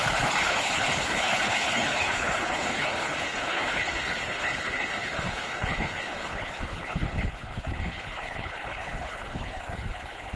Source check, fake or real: fake